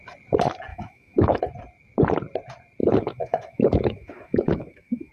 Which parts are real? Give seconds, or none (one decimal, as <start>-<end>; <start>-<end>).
0.0-0.7; 1.4-2.8